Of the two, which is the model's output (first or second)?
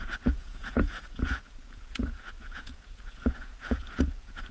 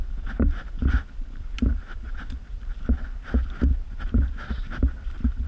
first